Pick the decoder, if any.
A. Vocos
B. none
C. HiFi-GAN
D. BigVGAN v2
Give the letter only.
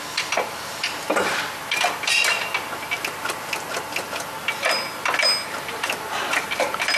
B